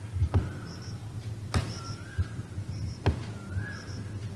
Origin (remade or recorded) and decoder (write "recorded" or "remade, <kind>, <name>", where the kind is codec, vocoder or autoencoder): recorded